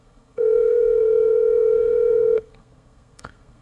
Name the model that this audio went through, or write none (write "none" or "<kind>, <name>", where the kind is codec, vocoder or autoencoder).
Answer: codec, SNAC